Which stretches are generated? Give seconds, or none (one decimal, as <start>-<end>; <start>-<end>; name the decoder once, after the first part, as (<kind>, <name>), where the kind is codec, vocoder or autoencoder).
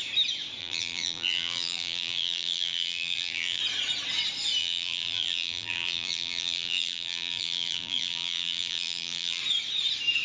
0.6-3.6 (vocoder, BigVGAN v2); 4.6-9.4